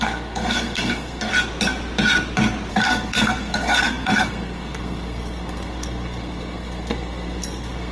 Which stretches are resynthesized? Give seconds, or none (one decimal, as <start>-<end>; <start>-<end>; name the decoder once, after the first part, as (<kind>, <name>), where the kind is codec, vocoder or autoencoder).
0.0-1.3 (codec, SNAC); 2.7-7.9